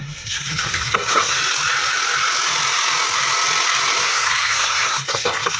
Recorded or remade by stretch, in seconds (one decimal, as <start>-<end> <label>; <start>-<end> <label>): 0.0-1.4 remade; 1.4-4.0 recorded; 4.0-5.6 remade